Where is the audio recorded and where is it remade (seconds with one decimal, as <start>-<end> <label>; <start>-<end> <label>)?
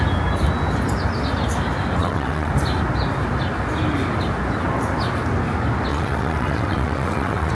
0.0-2.0 recorded; 2.0-2.5 remade; 2.5-5.9 recorded; 5.9-7.5 remade